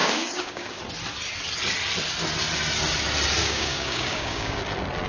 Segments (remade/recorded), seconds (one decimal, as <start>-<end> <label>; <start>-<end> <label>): 0.0-0.8 remade; 0.8-3.4 recorded; 3.4-4.6 remade; 4.6-5.1 recorded